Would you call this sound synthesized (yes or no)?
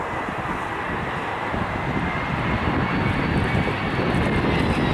no